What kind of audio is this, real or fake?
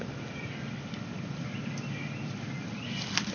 fake